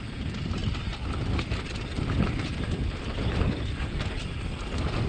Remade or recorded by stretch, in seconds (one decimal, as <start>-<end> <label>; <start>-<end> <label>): 0.0-5.1 recorded